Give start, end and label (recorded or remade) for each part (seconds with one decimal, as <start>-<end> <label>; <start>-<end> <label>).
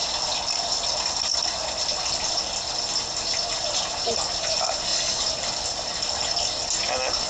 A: 0.0-7.3 recorded